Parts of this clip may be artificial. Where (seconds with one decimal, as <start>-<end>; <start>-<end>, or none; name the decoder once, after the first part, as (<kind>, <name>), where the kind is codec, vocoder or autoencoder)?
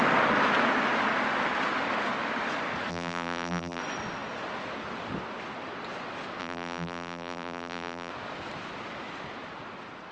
2.9-3.8 (vocoder, BigVGAN v2); 6.4-8.1